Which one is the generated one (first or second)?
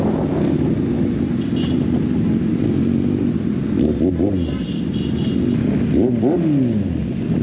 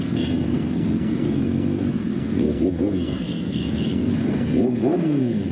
second